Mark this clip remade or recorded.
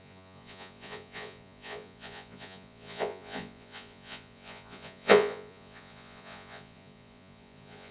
remade